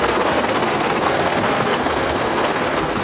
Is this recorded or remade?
remade